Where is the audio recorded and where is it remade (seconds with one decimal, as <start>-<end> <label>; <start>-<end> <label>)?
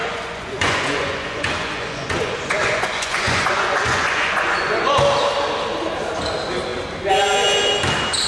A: 0.0-5.0 remade; 5.0-8.3 recorded